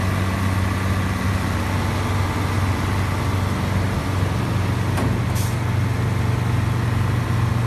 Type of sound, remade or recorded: recorded